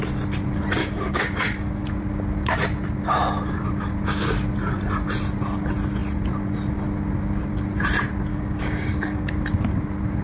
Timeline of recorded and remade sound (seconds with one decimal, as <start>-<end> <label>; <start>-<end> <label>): 0.0-0.8 recorded; 0.8-1.9 remade; 1.9-8.3 recorded; 8.3-9.3 remade; 9.3-10.2 recorded